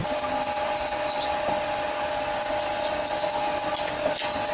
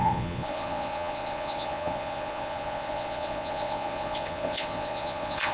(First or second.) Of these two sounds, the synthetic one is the second